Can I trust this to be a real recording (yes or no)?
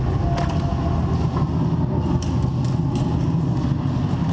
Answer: yes